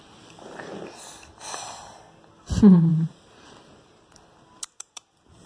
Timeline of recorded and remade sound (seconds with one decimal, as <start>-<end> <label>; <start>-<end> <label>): 0.0-0.7 remade; 0.7-2.4 recorded; 2.4-5.5 remade